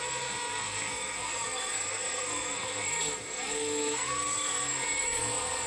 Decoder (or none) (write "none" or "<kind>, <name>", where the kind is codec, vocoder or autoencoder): codec, SNAC